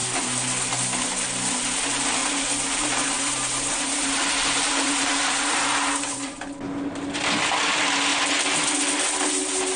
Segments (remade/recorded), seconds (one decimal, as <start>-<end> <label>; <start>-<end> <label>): 0.0-2.2 recorded; 2.2-6.4 remade; 6.4-9.8 recorded